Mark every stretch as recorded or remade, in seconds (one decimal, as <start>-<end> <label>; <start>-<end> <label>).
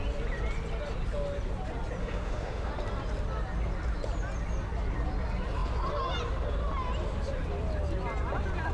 0.0-2.0 recorded; 2.0-2.7 remade; 2.7-8.7 recorded